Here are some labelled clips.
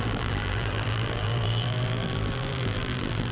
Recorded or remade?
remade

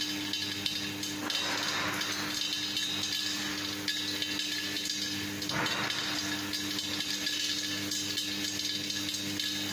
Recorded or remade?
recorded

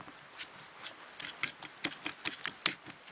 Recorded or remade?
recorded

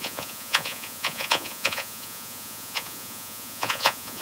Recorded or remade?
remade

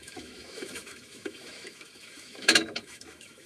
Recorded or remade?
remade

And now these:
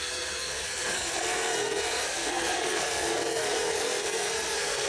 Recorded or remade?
remade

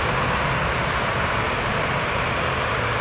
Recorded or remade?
recorded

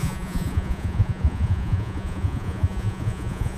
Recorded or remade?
remade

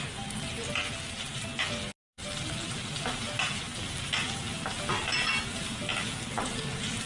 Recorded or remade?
recorded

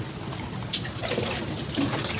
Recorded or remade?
recorded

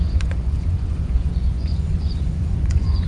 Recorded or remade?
remade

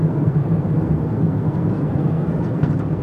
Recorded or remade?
remade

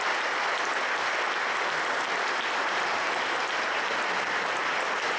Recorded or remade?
recorded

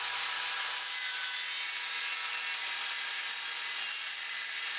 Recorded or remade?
recorded